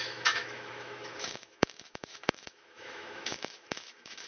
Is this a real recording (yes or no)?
no